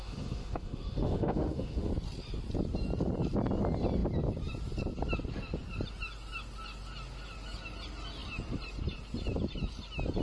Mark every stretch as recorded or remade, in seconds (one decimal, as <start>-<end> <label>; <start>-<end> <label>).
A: 0.0-1.9 remade; 1.9-10.2 recorded